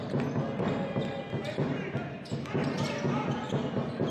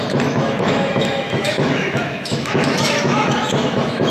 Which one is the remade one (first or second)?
second